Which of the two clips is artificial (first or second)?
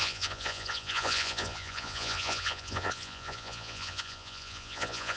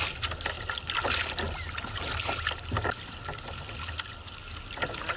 first